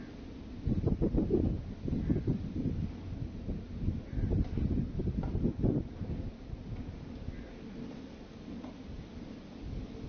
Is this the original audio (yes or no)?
yes